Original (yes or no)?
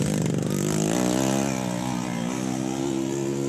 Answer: yes